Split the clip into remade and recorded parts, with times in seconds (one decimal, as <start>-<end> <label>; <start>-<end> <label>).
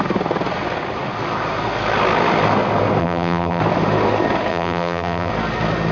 0.0-3.0 recorded; 3.0-3.6 remade; 3.6-4.5 recorded; 4.5-5.3 remade; 5.3-5.9 recorded